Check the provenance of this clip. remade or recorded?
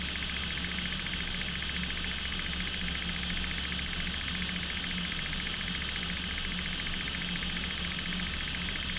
recorded